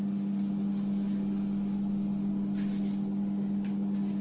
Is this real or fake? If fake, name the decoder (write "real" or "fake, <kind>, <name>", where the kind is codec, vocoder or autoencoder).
real